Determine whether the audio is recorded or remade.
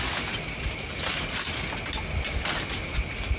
recorded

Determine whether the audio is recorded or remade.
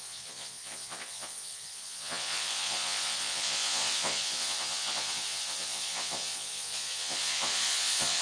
remade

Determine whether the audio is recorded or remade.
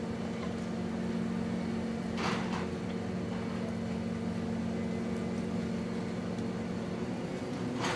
recorded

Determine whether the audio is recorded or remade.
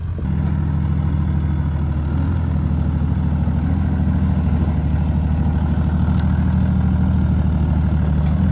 recorded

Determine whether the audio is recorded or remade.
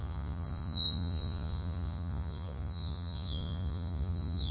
remade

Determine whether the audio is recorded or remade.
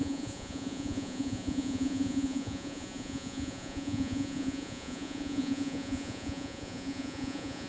remade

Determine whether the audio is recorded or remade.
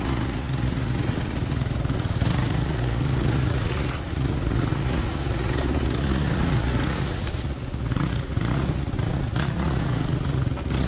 remade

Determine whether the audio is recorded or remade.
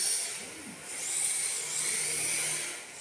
recorded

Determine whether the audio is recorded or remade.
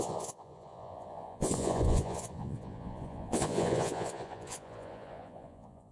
remade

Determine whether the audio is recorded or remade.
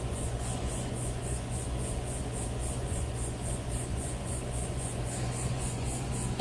remade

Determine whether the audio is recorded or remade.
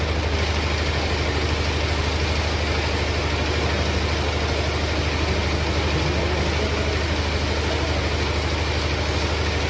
recorded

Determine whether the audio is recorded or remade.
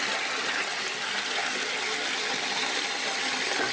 recorded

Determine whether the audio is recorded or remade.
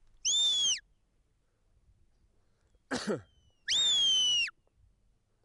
recorded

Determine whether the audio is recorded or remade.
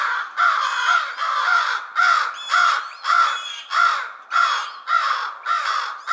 recorded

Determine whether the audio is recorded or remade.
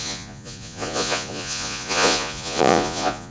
remade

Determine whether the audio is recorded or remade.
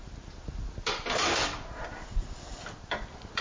recorded